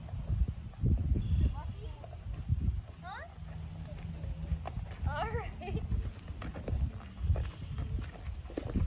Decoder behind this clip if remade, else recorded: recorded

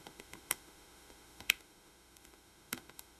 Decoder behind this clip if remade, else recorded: remade, autoencoder, DAC-VAE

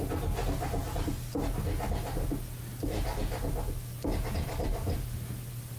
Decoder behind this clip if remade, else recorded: recorded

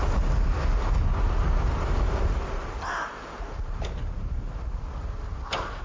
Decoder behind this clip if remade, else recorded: recorded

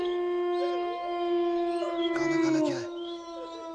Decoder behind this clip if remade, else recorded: remade, autoencoder, DAC-VAE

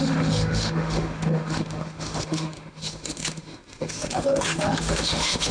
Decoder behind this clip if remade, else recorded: remade, autoencoder, DAC-VAE